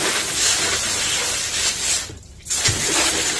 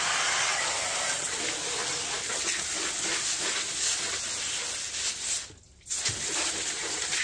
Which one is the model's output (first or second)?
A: first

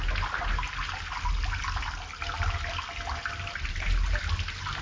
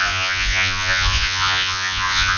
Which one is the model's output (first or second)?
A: second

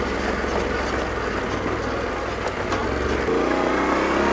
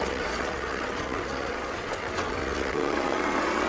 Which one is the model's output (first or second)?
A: second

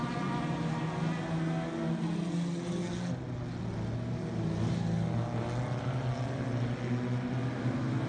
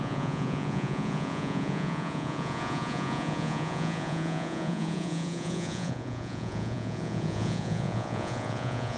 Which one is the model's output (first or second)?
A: second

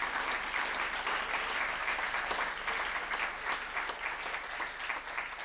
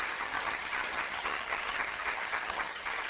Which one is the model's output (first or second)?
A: second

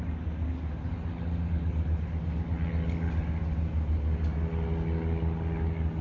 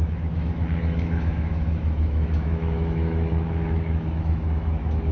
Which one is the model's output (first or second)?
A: second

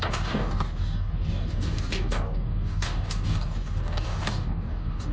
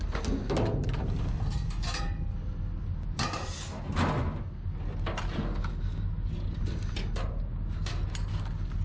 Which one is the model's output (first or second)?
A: first